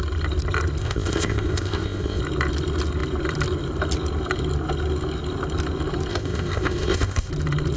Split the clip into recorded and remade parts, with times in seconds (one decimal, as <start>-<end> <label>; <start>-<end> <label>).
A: 0.0-0.8 recorded; 0.8-2.2 remade; 2.2-6.1 recorded; 6.1-7.3 remade; 7.3-7.8 recorded